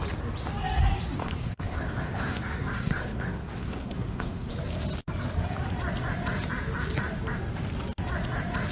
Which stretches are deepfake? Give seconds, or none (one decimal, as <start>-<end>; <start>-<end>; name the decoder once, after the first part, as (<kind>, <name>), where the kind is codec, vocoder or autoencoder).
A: 1.2-4.5 (codec, SNAC)